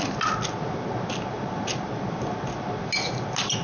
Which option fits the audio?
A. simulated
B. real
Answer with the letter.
B